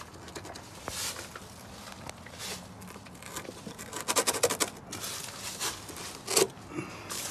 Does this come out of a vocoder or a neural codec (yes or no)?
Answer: no